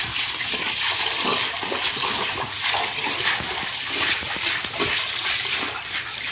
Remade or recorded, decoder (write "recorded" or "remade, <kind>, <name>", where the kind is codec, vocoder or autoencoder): remade, vocoder, BigVGAN v2